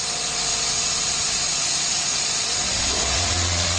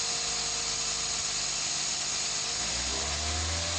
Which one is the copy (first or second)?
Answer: first